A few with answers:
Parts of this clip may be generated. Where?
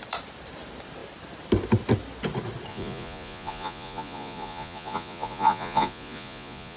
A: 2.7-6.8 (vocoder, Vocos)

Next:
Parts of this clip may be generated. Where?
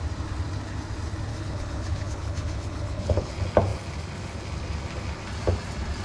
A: 1.3-3.3 (codec, HILCodec)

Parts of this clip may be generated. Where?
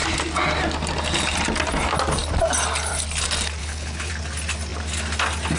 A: 3.6-4.1 (codec, HILCodec)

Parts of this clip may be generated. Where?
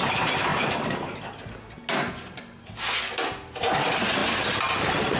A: none